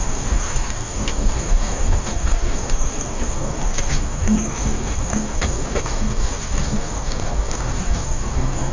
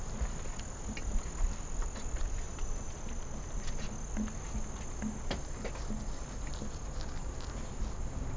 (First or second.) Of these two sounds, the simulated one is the first